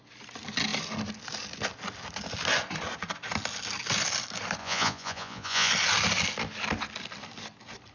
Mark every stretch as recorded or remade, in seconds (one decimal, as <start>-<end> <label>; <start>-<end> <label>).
0.0-4.6 recorded; 4.6-5.7 remade; 5.7-7.9 recorded